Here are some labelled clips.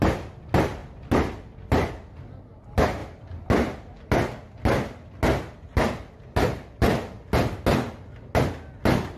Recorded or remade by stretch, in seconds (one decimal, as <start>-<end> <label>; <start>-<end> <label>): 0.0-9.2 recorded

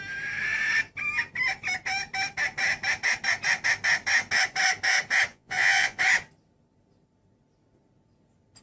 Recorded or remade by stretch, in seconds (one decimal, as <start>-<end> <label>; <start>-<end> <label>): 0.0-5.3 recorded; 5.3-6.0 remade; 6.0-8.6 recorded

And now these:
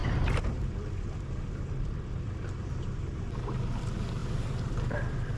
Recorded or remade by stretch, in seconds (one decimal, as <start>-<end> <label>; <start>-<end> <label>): 0.0-3.2 remade; 3.2-5.4 recorded

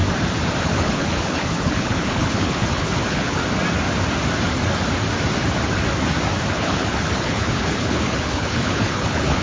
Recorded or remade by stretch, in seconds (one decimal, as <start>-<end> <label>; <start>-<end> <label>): 0.0-0.6 recorded; 0.6-3.4 remade; 3.4-6.5 recorded; 6.5-9.4 remade

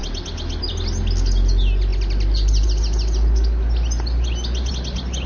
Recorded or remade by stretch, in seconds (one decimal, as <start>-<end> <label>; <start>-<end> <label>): 0.0-5.3 recorded

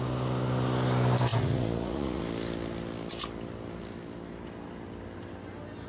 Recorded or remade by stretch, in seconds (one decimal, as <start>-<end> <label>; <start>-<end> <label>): 0.0-1.3 recorded; 1.3-2.2 remade; 2.2-5.9 recorded